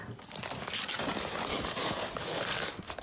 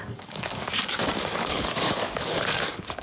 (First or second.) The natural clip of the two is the first